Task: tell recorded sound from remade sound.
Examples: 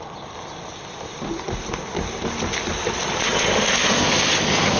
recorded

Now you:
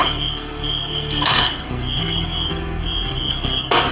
remade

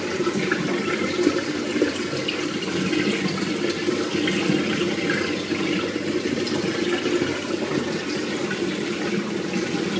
recorded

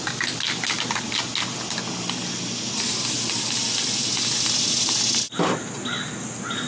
recorded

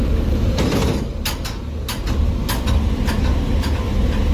recorded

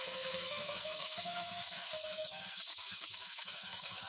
remade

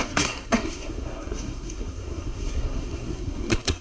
remade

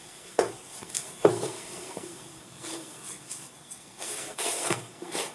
remade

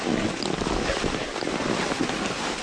recorded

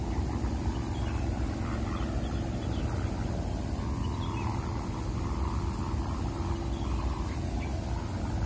recorded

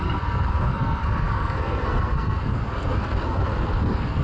remade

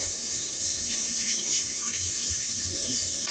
remade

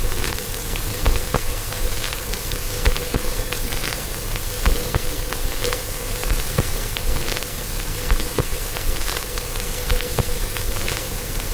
remade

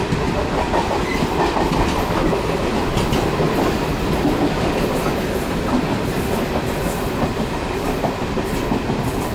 recorded